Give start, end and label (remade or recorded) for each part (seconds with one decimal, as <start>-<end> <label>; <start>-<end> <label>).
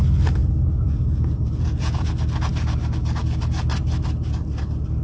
0.0-0.4 recorded; 0.4-2.1 remade; 2.1-5.0 recorded